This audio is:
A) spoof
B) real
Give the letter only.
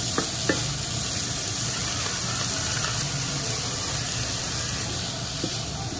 B